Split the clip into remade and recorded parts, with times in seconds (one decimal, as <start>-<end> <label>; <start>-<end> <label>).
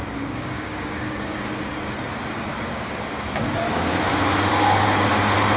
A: 0.0-1.9 remade; 1.9-2.5 recorded; 2.5-4.0 remade; 4.0-4.5 recorded; 4.5-5.1 remade; 5.1-5.6 recorded